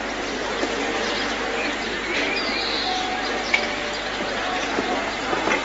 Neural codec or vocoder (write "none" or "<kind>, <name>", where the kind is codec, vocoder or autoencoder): none